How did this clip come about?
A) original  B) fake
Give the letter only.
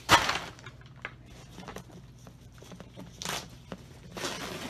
A